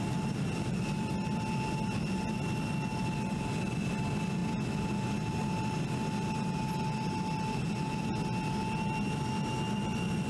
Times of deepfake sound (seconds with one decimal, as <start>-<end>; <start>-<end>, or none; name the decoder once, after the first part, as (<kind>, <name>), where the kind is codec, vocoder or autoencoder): none